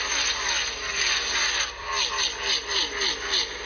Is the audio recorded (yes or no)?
yes